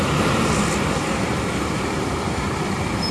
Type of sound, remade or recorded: remade